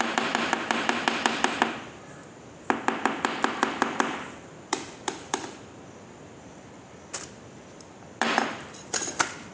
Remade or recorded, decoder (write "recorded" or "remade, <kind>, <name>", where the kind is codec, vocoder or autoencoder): remade, vocoder, BigVGAN v2